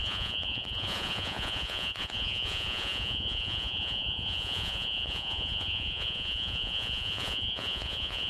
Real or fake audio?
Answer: fake